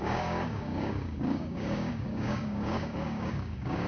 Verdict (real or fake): fake